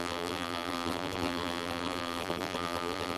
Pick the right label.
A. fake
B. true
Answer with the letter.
A